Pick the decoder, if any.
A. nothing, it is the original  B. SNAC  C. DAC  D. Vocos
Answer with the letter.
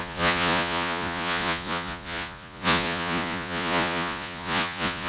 D